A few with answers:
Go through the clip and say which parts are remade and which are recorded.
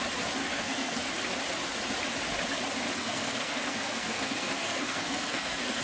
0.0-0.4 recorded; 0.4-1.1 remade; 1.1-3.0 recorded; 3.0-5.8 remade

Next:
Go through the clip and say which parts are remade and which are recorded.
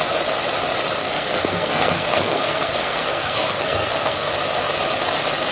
0.0-1.0 recorded; 1.0-4.3 remade; 4.3-5.5 recorded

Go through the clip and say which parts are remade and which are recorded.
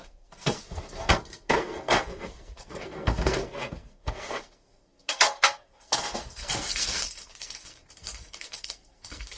0.0-9.4 remade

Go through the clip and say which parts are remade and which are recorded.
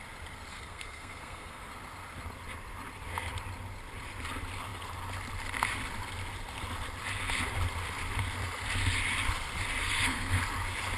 0.0-0.5 recorded; 0.5-1.7 remade; 1.7-9.8 recorded; 9.8-10.4 remade; 10.4-11.0 recorded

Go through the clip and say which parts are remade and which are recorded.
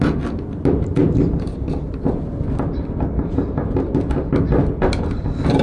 0.0-5.6 recorded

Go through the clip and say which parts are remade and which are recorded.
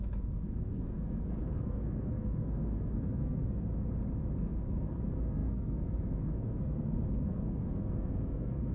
0.0-3.7 remade; 3.7-4.4 recorded; 4.4-8.7 remade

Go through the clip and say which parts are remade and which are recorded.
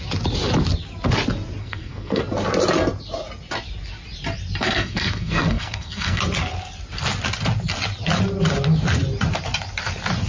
0.0-1.6 recorded; 1.6-2.2 remade; 2.2-4.6 recorded; 4.6-6.2 remade; 6.2-10.3 recorded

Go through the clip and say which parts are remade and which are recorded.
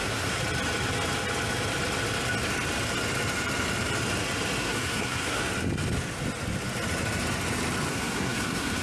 0.0-0.4 remade; 0.4-4.6 recorded; 4.6-5.4 remade; 5.4-7.9 recorded; 7.9-8.8 remade